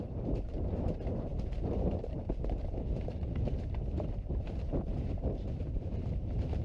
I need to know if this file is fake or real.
fake